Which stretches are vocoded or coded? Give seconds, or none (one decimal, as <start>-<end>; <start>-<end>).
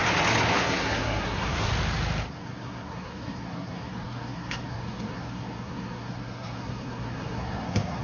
0.5-1.7; 2.3-8.0